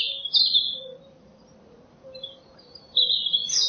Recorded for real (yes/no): yes